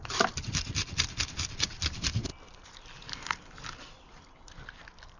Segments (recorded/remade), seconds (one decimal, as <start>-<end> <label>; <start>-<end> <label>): 0.0-5.2 recorded

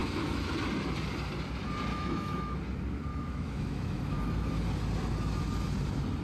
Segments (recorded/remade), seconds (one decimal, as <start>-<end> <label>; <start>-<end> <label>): 0.0-0.5 remade; 0.5-1.9 recorded; 1.9-2.6 remade; 2.6-3.1 recorded; 3.1-4.5 remade; 4.5-6.2 recorded

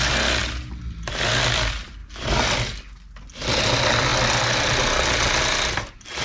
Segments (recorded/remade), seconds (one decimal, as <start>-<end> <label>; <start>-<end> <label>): 0.0-6.2 recorded

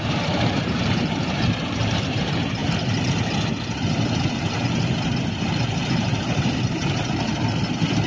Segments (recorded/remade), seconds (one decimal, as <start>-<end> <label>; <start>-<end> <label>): 0.0-2.6 remade; 2.6-5.4 recorded; 5.4-7.3 remade; 7.3-8.1 recorded